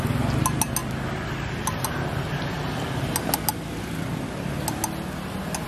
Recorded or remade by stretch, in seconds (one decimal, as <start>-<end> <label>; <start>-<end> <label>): 0.0-5.7 recorded